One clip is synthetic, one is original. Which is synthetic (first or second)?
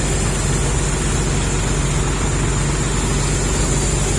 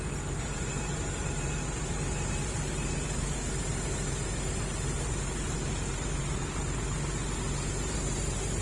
second